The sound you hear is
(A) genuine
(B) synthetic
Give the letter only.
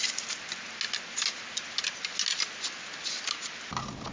A